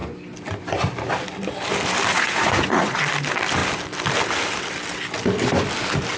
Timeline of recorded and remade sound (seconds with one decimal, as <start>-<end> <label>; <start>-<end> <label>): 0.0-2.1 recorded; 2.1-3.0 remade; 3.0-6.2 recorded